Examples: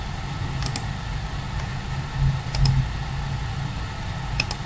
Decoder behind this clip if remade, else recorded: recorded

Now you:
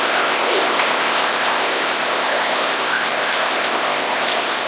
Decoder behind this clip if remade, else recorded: remade, codec, ZipCodec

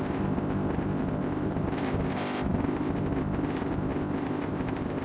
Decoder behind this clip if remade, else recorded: remade, codec, ZipCodec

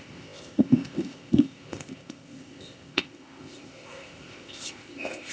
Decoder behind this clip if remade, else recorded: remade, codec, ZipCodec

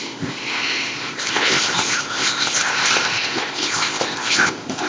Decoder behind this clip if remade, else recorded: remade, codec, ZipCodec